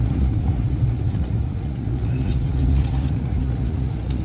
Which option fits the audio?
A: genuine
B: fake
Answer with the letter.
B